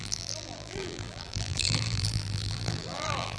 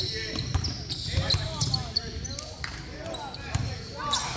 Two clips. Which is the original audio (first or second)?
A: second